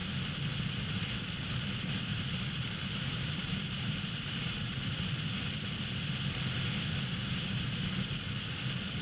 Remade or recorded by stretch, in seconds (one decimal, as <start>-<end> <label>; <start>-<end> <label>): 0.0-2.1 recorded; 2.1-5.0 remade; 5.0-7.2 recorded; 7.2-8.1 remade; 8.1-9.0 recorded

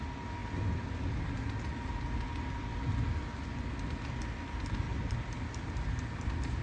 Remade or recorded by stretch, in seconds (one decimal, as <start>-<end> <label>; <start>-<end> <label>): 0.0-4.9 recorded; 4.9-6.6 remade

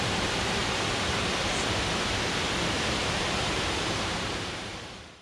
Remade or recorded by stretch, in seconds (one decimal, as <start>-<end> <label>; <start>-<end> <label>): 0.0-0.6 remade; 0.6-3.0 recorded; 3.0-5.2 remade

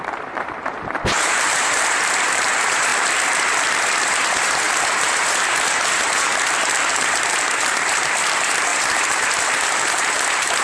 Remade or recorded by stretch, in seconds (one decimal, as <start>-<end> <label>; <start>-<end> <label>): 0.0-2.9 remade; 2.9-3.8 recorded; 3.8-6.3 remade; 6.3-6.9 recorded; 6.9-10.6 remade

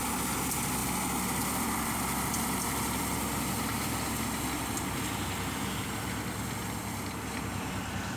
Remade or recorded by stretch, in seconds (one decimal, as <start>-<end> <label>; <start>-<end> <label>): 0.0-8.2 recorded

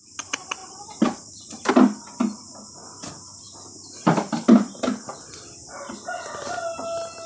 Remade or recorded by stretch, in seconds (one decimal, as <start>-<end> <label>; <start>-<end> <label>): 0.0-0.6 recorded; 0.6-1.7 remade; 1.7-7.3 recorded